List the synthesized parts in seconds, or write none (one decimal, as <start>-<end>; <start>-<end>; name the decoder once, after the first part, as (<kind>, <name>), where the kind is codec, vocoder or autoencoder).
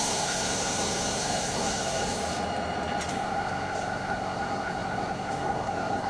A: 0.0-2.2 (codec, SNAC); 3.1-6.1